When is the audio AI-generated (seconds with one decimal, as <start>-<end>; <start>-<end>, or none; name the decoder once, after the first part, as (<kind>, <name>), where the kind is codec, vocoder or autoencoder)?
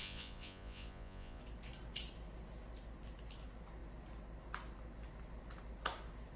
0.0-1.4 (vocoder, Vocos)